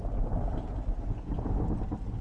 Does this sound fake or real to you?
real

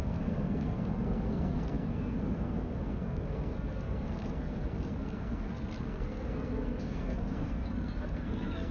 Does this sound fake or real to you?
fake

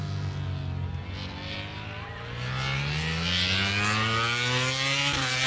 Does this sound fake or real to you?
real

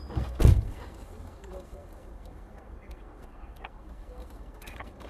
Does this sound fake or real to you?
fake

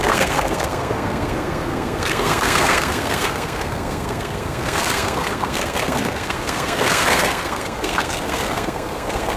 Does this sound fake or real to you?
fake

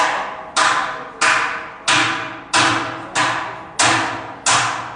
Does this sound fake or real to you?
real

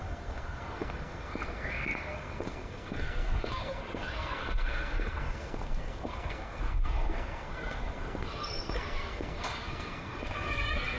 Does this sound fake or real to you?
fake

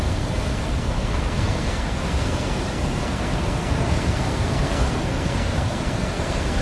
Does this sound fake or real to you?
fake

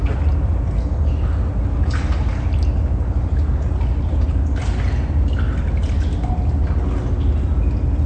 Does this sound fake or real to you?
real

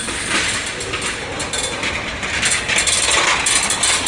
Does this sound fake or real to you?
real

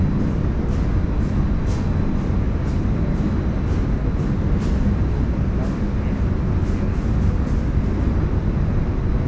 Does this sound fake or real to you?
real